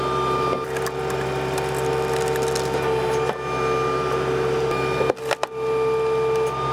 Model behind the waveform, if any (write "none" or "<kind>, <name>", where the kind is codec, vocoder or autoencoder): none